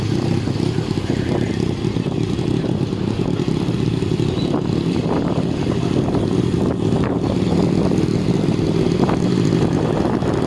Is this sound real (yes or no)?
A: yes